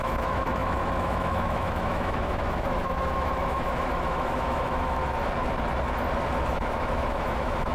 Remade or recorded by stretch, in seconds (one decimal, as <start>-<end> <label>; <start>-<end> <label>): 0.0-5.0 remade; 5.0-6.5 recorded; 6.5-7.7 remade